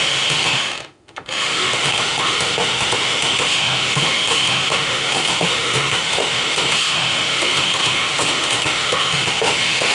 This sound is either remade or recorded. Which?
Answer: remade